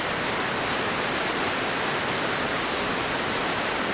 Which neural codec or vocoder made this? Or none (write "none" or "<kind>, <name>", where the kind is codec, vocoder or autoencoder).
none